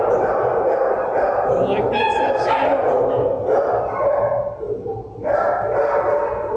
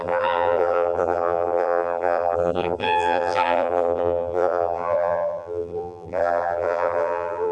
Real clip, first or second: first